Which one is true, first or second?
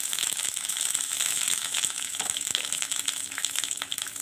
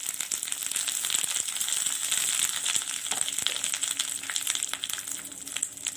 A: second